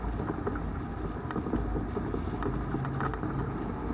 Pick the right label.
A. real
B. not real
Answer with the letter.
A